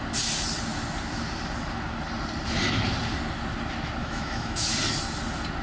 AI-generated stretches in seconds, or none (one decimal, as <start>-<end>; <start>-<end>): 4.0-4.7